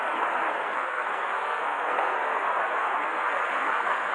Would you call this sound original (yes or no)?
no